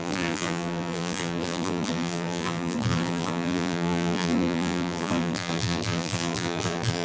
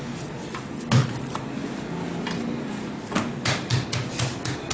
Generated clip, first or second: first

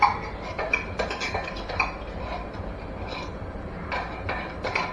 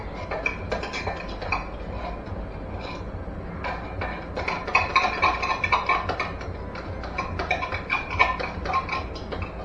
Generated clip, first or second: first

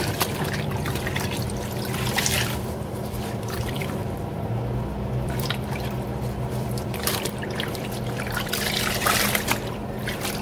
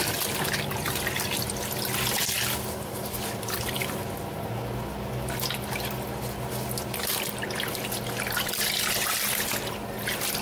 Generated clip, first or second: first